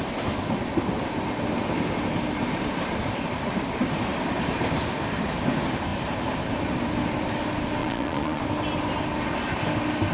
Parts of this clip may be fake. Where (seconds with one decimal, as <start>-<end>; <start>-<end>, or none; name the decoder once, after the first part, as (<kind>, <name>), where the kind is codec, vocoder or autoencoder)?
7.8-8.4 (vocoder, Vocos)